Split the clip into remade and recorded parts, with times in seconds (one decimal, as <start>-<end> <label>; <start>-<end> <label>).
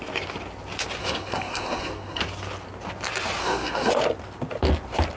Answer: 0.0-1.0 recorded; 1.0-2.2 remade; 2.2-3.4 recorded; 3.4-3.9 remade; 3.9-5.2 recorded